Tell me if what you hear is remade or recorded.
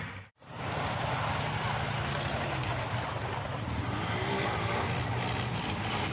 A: recorded